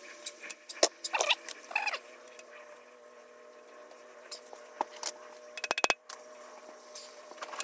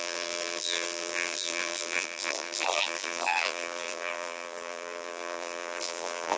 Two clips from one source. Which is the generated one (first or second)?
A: second